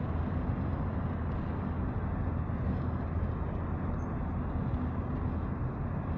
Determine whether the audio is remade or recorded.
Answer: recorded